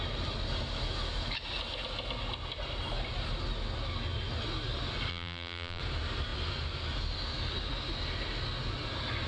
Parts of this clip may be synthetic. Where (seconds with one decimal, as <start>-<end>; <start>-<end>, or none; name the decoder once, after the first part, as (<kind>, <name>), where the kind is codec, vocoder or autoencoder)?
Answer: 5.1-5.8 (vocoder, BigVGAN v2)